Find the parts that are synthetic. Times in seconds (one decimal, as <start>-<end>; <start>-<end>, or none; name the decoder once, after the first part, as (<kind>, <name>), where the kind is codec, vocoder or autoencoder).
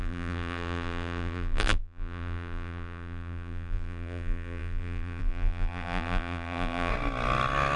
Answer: 0.0-6.9 (vocoder, BigVGAN v2)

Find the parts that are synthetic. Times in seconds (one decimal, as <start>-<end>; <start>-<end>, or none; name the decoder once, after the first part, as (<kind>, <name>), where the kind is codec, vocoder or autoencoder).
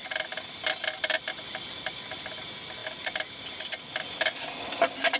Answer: none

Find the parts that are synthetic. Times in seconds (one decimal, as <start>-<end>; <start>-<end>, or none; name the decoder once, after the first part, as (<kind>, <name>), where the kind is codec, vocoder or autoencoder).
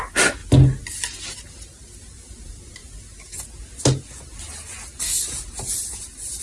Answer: none